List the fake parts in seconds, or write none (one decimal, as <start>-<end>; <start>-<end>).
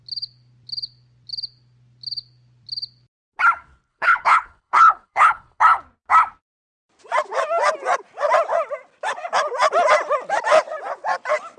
3.9-5.6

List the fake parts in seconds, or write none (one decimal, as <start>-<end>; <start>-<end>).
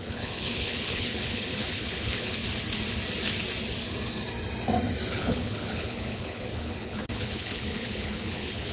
0.0-2.4; 5.1-8.7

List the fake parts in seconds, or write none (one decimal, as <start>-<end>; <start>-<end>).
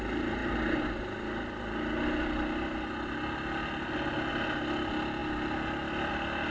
none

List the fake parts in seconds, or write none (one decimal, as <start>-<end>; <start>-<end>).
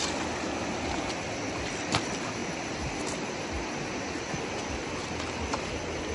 none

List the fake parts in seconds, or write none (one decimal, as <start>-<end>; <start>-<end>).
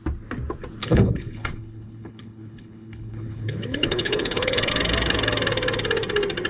0.8-4.7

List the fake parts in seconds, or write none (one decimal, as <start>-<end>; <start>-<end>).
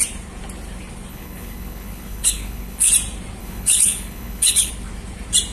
1.1-2.9; 3.4-4.7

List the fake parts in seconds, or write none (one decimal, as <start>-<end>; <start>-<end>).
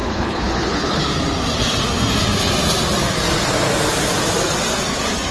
0.0-1.0